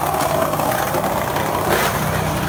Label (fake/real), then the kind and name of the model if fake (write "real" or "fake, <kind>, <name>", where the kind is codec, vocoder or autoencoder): real